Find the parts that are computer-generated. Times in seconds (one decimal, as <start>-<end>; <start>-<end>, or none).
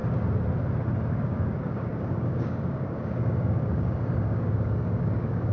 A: 1.1-5.5